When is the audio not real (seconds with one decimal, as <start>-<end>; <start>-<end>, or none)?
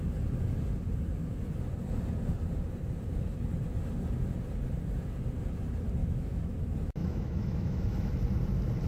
6.0-6.6; 7.0-8.1